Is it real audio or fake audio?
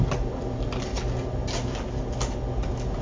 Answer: real